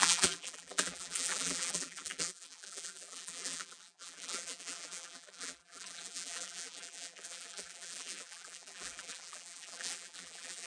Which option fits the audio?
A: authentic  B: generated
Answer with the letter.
B